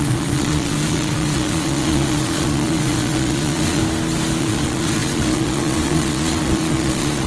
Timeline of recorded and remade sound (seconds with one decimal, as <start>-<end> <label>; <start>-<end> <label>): 0.0-3.8 remade; 3.8-4.4 recorded; 4.4-7.3 remade